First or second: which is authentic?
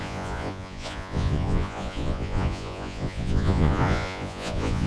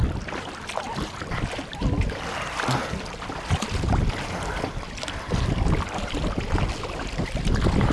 second